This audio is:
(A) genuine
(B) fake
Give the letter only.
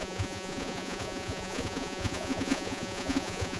B